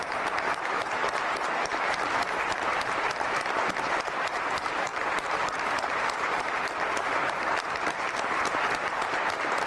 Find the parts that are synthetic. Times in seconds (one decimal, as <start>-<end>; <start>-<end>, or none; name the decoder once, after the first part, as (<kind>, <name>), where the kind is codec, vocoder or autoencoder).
0.0-9.7 (vocoder, BigVGAN v2)